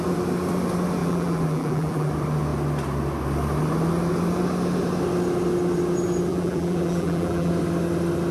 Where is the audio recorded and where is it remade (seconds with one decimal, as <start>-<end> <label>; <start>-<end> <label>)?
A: 0.0-1.0 recorded; 1.0-2.1 remade; 2.1-6.3 recorded; 6.3-7.5 remade; 7.5-8.3 recorded